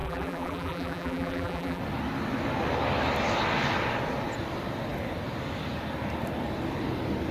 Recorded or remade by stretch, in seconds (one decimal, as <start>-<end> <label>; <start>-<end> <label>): 0.0-1.8 remade; 1.8-7.3 recorded